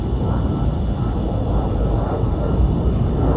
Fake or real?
real